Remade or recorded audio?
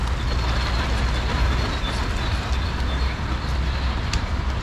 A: recorded